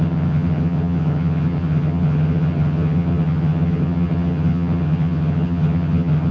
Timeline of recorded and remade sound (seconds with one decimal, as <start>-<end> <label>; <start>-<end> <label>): 0.0-6.3 remade